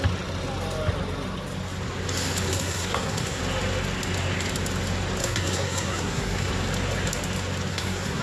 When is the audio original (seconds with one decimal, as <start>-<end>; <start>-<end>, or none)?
0.0-2.5; 3.4-5.2; 6.5-7.7